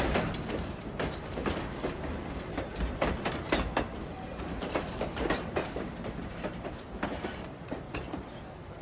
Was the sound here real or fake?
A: fake